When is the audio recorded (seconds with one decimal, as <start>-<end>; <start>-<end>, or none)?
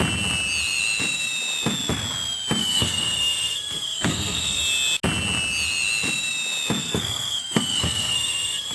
0.0-2.6; 4.6-6.8